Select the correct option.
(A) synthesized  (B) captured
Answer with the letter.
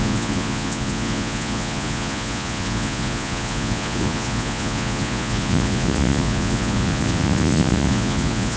A